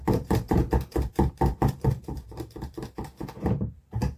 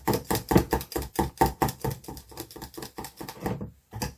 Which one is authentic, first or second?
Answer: second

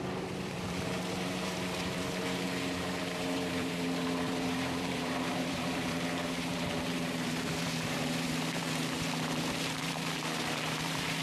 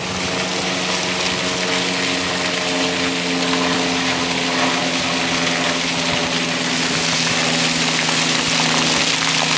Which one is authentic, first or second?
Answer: second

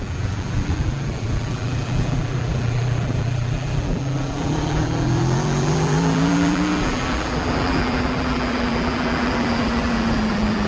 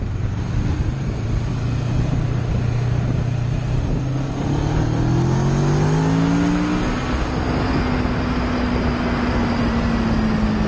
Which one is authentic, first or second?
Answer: second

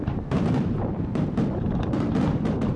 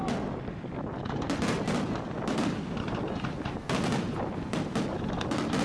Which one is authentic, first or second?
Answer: second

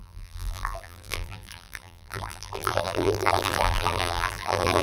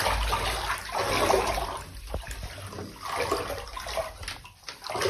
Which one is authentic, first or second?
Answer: second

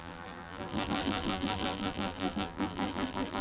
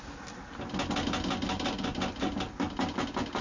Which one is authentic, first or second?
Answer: second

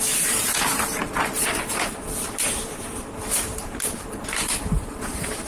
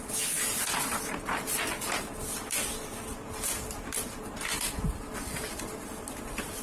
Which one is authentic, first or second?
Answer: second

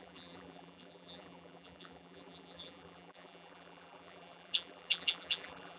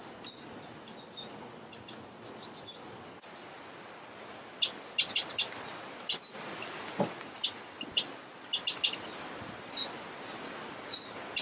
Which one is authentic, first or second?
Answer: second